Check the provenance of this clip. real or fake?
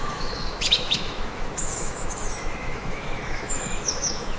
fake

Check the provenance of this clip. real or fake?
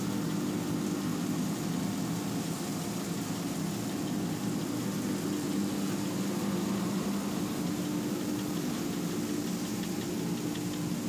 real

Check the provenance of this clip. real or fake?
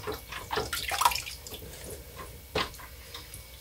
real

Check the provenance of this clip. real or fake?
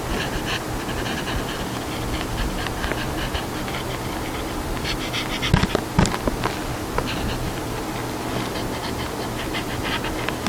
real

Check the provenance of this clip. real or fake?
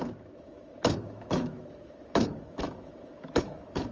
fake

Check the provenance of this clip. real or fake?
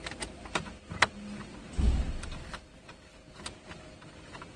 real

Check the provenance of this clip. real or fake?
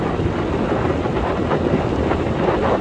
real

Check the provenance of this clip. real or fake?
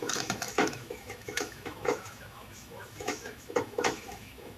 fake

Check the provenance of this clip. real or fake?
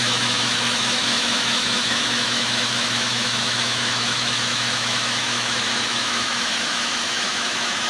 fake